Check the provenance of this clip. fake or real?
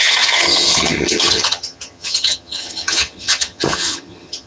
fake